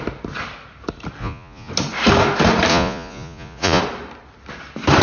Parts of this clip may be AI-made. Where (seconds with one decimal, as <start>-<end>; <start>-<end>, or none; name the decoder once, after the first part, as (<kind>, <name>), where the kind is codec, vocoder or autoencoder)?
1.2-1.7 (vocoder, Vocos); 2.7-3.8